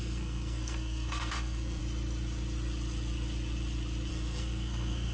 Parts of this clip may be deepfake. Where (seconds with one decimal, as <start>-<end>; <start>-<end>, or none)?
0.0-1.8; 4.1-5.1